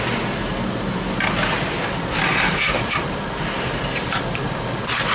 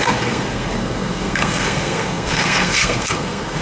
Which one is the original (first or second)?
first